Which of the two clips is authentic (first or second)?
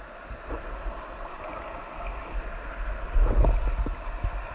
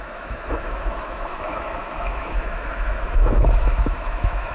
first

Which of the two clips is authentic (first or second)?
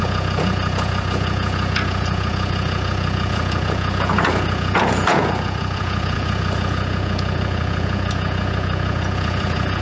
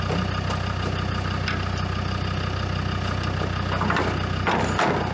second